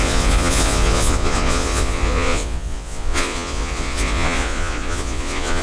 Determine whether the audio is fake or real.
fake